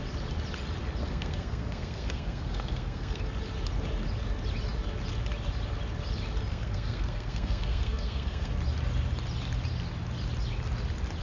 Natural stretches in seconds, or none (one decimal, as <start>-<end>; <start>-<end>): 0.0-1.0; 3.2-6.5; 8.5-11.2